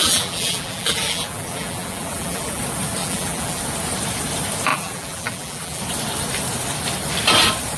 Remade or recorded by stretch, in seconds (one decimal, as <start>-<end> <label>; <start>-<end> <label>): 0.0-2.6 remade; 2.6-3.0 recorded; 3.0-3.6 remade; 3.6-4.7 recorded; 4.7-5.8 remade; 5.8-7.8 recorded

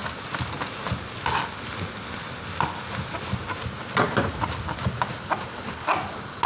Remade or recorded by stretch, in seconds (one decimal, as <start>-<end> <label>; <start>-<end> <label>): 0.0-6.5 recorded

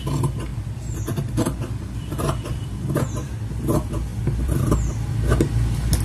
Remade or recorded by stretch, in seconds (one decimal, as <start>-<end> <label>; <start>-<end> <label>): 0.0-0.5 recorded; 0.5-3.0 remade; 3.0-4.1 recorded; 4.1-4.9 remade; 4.9-6.0 recorded

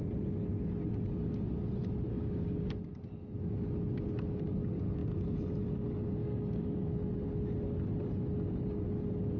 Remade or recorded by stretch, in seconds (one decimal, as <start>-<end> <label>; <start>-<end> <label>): 0.0-2.1 recorded; 2.1-2.7 remade; 2.7-6.2 recorded; 6.2-6.9 remade; 6.9-9.4 recorded

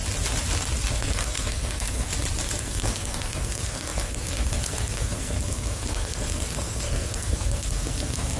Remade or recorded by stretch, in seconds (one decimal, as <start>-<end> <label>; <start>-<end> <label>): 0.0-1.0 recorded; 1.0-2.1 remade; 2.1-2.6 recorded; 2.6-8.4 remade